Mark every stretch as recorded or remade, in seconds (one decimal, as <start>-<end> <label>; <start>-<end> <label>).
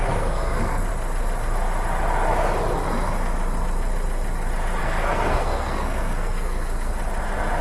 0.0-0.9 remade; 0.9-4.8 recorded; 4.8-6.9 remade; 6.9-7.6 recorded